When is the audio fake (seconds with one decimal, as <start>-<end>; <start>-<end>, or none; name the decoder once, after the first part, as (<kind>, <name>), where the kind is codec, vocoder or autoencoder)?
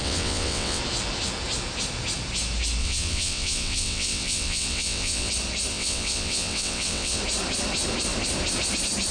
0.0-0.8 (vocoder, WaveNeXt); 2.8-5.3; 5.7-7.2